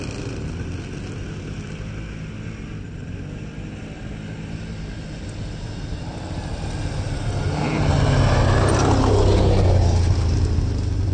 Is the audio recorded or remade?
recorded